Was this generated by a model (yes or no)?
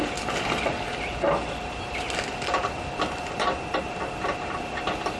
no